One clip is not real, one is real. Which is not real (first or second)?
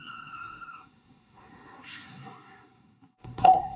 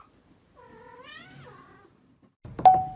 first